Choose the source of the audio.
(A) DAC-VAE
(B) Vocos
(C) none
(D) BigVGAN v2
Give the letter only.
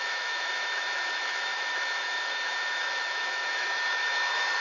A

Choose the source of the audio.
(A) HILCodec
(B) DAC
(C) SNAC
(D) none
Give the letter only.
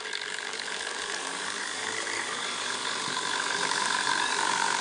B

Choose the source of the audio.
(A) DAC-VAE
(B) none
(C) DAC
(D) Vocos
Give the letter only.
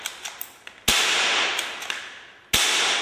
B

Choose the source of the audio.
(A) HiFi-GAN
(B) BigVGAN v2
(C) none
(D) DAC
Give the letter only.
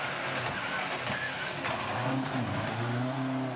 C